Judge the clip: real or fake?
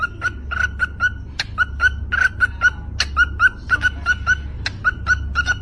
real